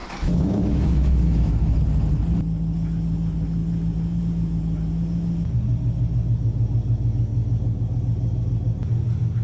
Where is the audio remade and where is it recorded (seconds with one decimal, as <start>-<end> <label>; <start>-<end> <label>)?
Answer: 0.0-1.8 remade; 1.8-9.4 recorded

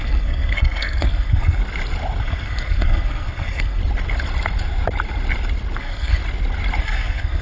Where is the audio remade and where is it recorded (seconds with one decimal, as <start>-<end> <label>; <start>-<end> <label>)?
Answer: 0.0-1.6 remade; 1.6-2.2 recorded; 2.2-3.8 remade; 3.8-5.8 recorded; 5.8-6.2 remade; 6.2-6.8 recorded; 6.8-7.4 remade

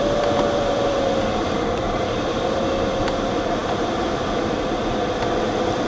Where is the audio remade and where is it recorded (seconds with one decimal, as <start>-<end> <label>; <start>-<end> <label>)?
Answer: 0.0-5.9 remade

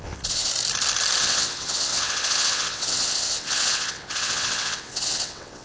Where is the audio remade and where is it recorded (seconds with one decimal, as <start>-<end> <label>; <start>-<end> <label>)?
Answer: 0.0-0.5 remade; 0.5-1.2 recorded; 1.2-5.6 remade

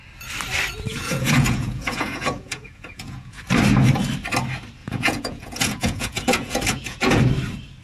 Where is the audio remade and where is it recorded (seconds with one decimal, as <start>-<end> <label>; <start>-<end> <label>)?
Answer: 0.0-0.9 recorded; 0.9-3.4 remade; 3.4-4.8 recorded; 4.8-7.2 remade; 7.2-7.8 recorded

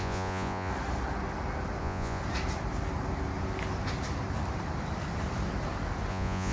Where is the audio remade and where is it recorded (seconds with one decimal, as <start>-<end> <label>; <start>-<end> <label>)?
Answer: 0.0-0.7 remade; 0.7-1.8 recorded; 1.8-2.2 remade; 2.2-6.1 recorded; 6.1-6.5 remade